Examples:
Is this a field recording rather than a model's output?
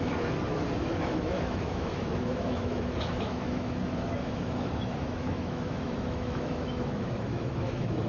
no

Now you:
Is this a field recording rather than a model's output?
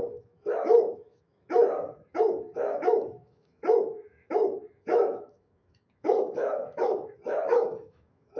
no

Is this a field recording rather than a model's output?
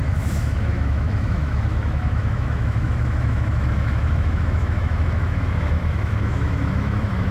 no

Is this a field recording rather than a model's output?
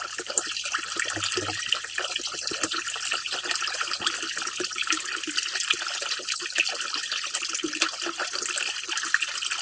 yes